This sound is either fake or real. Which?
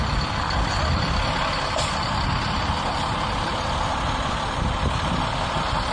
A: real